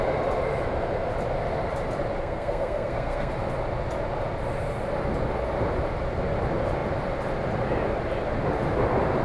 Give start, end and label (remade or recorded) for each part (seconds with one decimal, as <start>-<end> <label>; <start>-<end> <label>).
0.0-2.2 recorded; 2.2-3.3 remade; 3.3-9.2 recorded

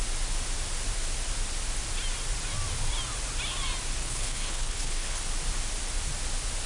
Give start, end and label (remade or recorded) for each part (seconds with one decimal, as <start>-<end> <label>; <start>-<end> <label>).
0.0-4.0 recorded; 4.0-5.2 remade; 5.2-6.7 recorded

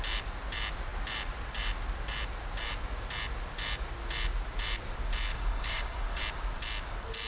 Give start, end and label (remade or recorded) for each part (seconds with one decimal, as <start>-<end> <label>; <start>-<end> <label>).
0.0-5.3 recorded; 5.3-6.2 remade; 6.2-7.3 recorded

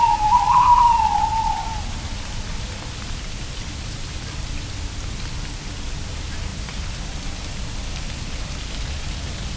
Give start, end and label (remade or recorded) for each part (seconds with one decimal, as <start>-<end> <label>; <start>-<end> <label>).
0.0-9.6 remade